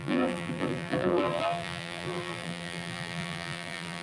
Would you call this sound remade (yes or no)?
yes